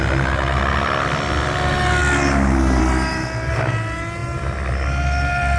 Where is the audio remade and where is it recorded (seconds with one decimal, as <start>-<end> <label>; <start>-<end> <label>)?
0.0-5.6 recorded